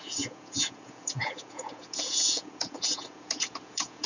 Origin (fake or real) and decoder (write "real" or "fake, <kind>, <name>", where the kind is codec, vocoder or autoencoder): fake, vocoder, Vocos